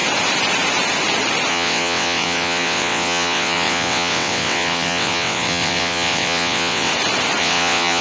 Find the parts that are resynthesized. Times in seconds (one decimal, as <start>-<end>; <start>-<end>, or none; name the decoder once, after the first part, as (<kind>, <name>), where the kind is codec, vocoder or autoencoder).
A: 1.5-6.9 (vocoder, WaveNeXt); 7.4-8.0